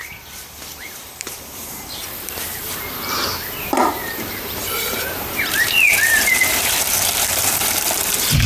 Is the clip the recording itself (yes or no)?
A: no